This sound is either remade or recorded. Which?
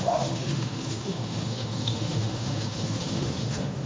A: remade